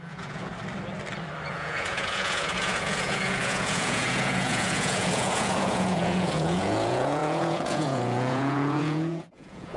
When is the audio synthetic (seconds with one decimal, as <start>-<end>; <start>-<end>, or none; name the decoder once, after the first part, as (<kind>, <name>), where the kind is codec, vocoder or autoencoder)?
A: 0.0-0.5 (vocoder, Vocos); 1.5-9.8